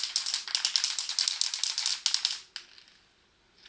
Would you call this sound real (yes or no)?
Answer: yes